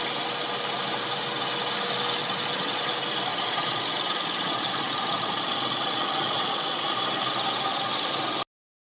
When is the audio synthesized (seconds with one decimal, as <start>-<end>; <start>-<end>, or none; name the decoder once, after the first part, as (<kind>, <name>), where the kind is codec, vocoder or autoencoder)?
2.2-2.9 (vocoder, Vocos); 3.3-6.9; 7.7-8.2